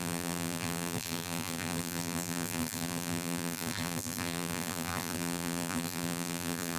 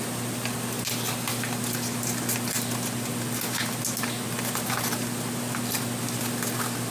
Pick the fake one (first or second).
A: first